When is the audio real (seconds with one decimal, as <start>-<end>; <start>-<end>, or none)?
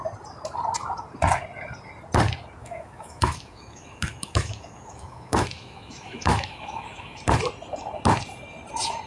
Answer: 0.0-2.6; 7.2-9.1